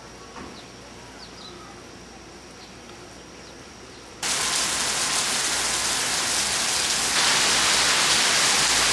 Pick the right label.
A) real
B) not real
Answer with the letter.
A